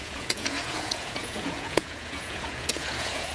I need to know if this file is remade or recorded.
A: remade